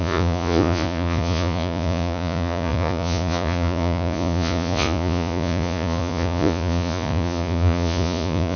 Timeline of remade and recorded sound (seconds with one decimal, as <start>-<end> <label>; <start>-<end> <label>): 0.0-8.6 remade